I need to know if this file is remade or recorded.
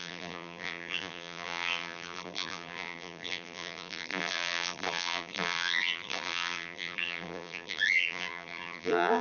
remade